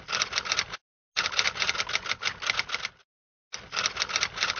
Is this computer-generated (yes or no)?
no